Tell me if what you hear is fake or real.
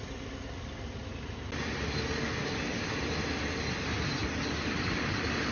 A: real